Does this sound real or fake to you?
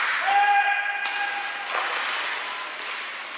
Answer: real